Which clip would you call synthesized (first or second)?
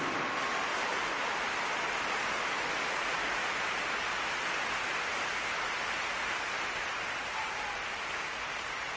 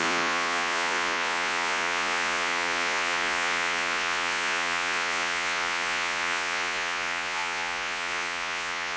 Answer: second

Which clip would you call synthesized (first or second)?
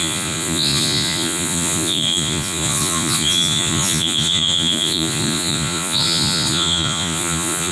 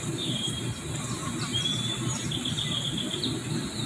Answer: first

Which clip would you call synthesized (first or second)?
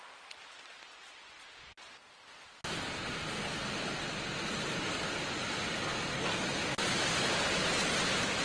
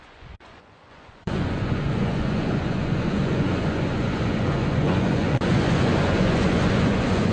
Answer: second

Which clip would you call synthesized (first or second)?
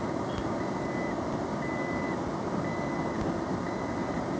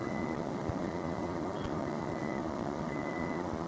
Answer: second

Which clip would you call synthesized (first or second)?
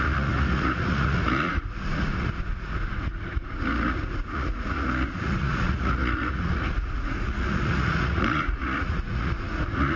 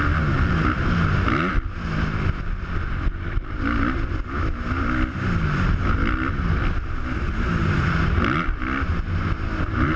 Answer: first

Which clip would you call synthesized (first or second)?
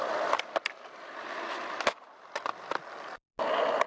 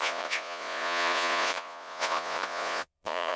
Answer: second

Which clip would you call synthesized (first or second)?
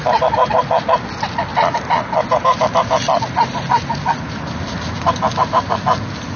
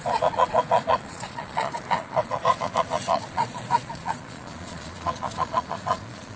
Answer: second